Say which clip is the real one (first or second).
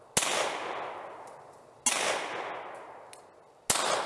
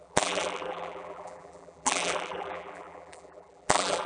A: first